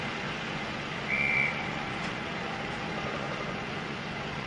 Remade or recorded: remade